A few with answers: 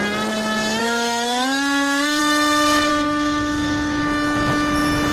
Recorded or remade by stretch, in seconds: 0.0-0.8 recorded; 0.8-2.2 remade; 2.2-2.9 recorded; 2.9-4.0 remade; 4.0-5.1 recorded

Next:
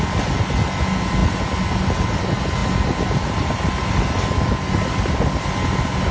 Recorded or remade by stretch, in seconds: 0.0-6.1 recorded

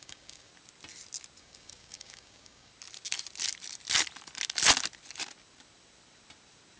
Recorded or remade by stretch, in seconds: 0.0-0.5 remade; 0.5-1.4 recorded; 1.4-2.7 remade; 2.7-6.8 recorded

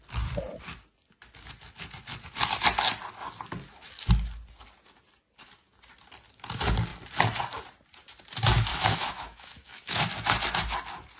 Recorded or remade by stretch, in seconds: 0.0-8.7 recorded; 8.7-10.0 remade; 10.0-11.2 recorded

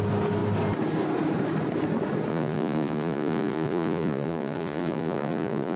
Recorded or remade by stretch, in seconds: 0.0-2.3 recorded; 2.3-5.8 remade